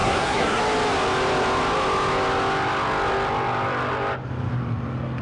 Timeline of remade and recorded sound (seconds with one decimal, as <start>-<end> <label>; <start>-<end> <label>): 0.0-0.6 remade; 0.6-5.2 recorded